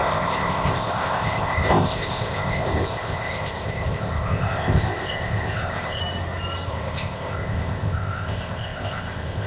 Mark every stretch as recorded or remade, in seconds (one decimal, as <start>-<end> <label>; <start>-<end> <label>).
0.0-6.0 remade; 6.0-6.7 recorded; 6.7-9.5 remade